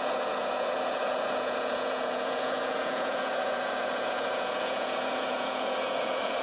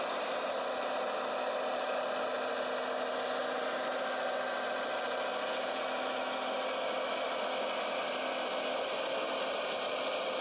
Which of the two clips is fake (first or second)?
first